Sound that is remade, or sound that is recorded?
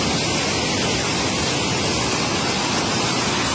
recorded